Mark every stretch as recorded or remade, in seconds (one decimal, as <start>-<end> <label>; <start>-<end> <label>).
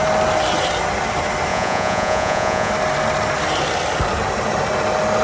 0.0-1.5 recorded; 1.5-2.7 remade; 2.7-5.2 recorded